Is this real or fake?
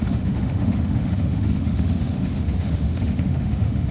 fake